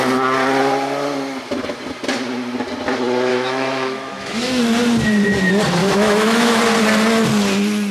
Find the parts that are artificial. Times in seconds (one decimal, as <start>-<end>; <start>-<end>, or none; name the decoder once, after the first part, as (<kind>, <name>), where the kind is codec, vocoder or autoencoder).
3.3-4.6 (autoencoder, DAC-VAE); 5.8-6.6